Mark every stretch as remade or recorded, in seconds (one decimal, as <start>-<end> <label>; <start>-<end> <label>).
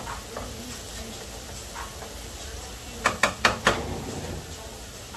0.0-5.2 recorded